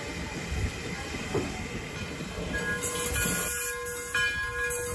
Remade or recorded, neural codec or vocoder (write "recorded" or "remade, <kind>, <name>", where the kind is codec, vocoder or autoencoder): recorded